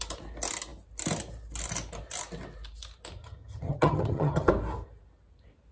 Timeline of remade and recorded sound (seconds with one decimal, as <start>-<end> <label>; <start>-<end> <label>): 0.0-3.2 recorded; 3.2-4.5 remade; 4.5-5.7 recorded